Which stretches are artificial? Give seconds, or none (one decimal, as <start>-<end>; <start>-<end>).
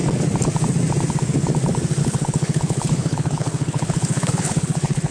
2.0-5.1